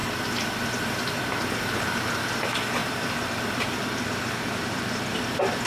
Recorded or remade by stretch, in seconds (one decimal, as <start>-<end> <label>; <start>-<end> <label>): 0.0-5.7 remade